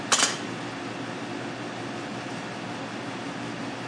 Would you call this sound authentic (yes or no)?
yes